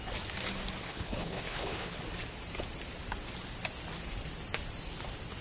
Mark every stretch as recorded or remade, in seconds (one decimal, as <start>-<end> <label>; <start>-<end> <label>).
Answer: 0.0-0.8 recorded; 0.8-2.0 remade; 2.0-5.4 recorded